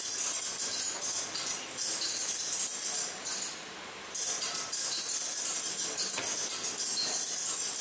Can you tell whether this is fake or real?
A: real